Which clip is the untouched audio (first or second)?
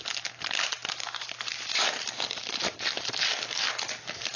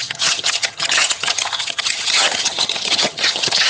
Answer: first